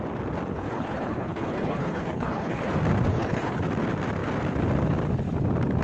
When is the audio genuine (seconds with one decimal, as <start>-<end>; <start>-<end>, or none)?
0.0-0.5; 2.7-3.1; 3.6-5.8